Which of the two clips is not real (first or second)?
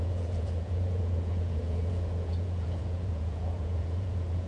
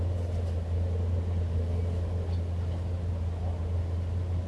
first